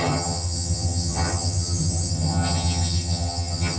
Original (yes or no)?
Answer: no